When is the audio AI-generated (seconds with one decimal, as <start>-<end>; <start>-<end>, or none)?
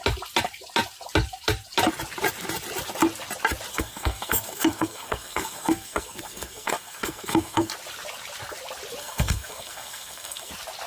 3.7-7.7; 9.0-10.5